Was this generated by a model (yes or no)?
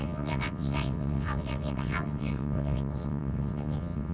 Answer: yes